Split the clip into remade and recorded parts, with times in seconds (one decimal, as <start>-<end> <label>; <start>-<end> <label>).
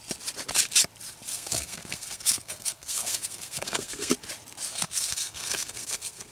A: 0.0-1.3 recorded; 1.3-4.1 remade; 4.1-4.7 recorded; 4.7-6.3 remade